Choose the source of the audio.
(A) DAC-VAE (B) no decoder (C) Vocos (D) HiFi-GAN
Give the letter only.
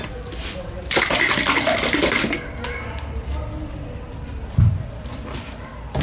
B